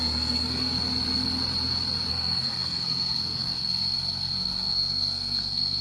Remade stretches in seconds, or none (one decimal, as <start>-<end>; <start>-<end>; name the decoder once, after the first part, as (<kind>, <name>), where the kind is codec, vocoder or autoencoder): 0.0-0.7 (codec, SNAC); 2.1-5.8